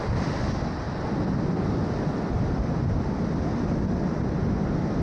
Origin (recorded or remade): recorded